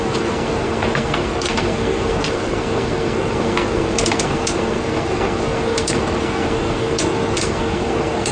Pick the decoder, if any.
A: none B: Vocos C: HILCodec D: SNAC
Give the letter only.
D